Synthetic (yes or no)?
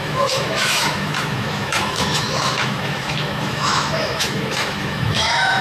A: yes